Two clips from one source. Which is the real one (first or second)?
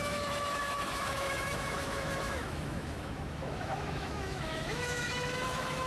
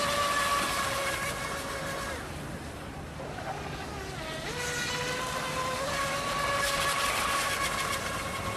second